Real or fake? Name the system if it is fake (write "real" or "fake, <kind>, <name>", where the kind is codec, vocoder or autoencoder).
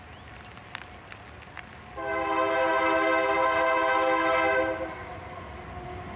real